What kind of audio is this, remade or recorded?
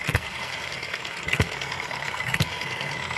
remade